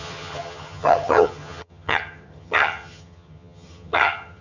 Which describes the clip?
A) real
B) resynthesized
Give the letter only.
B